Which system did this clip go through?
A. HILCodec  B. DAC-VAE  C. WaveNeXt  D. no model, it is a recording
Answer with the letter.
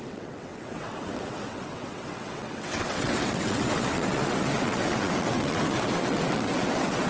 C